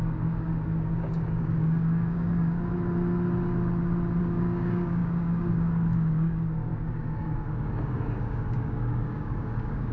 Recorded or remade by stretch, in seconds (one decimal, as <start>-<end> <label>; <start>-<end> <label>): 0.0-2.7 remade; 2.7-4.2 recorded; 4.2-9.9 remade

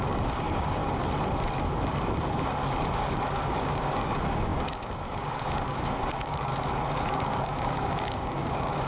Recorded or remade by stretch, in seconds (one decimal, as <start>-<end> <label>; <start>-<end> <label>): 0.0-0.8 remade; 0.8-3.3 recorded; 3.3-6.5 remade; 6.5-7.1 recorded; 7.1-8.9 remade

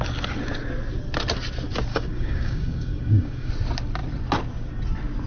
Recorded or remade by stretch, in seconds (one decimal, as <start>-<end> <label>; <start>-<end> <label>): 0.0-1.9 recorded; 1.9-3.5 remade; 3.5-5.3 recorded